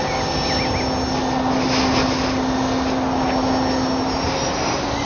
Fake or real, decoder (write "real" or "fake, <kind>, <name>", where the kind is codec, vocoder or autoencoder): real